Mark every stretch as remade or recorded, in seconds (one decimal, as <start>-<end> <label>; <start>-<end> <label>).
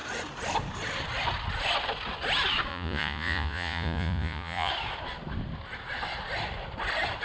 0.0-2.7 recorded; 2.7-4.7 remade; 4.7-7.2 recorded